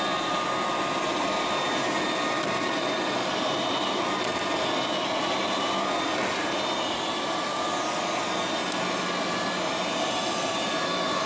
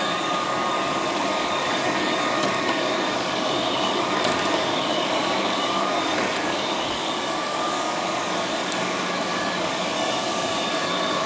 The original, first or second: first